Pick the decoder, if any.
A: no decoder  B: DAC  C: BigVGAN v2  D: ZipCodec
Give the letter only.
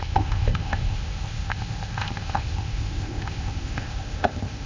D